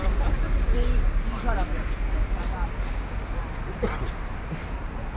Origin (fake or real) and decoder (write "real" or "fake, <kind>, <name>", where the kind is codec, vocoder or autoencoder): real